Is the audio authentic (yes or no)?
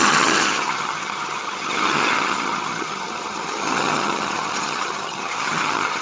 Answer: no